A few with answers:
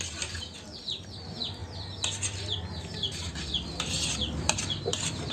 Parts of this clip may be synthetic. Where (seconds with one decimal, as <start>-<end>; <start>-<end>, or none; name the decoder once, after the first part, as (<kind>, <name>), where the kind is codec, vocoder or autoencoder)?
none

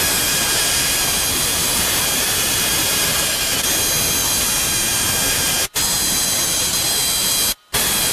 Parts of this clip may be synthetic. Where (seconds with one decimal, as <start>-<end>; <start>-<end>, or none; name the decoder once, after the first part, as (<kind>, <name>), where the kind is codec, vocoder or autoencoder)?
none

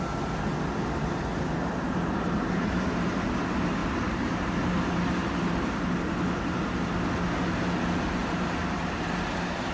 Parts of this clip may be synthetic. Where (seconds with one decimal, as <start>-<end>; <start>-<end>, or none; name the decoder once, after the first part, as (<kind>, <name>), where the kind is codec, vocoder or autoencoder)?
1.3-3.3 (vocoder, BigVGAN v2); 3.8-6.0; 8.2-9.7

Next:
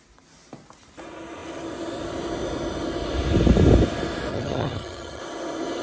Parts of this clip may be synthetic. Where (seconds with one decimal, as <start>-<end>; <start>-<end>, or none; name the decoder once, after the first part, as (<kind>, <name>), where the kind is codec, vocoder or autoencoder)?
4.3-5.2 (vocoder, HiFi-GAN)

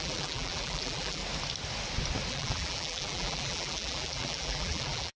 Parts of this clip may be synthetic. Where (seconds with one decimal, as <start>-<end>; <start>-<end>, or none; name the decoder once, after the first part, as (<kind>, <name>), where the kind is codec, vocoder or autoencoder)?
0.0-1.2 (vocoder, BigVGAN v2); 2.3-5.2

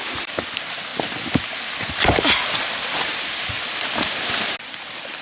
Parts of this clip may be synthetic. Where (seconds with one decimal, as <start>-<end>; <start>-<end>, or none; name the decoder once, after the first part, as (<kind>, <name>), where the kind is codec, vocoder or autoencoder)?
none

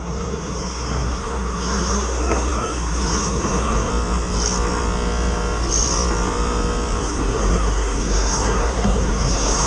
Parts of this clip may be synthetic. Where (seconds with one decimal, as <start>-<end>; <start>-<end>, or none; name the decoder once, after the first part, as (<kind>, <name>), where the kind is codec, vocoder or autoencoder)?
0.0-3.9 (codec, SNAC); 7.0-9.7

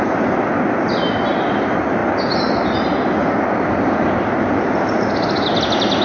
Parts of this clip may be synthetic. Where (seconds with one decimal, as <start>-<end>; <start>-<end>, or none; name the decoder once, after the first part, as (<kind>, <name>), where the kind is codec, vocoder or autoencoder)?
none